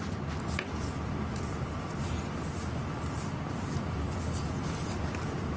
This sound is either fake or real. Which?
real